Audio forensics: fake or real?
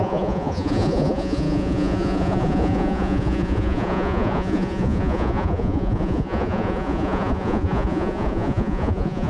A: fake